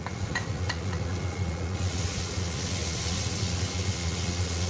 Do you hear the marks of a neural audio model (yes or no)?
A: yes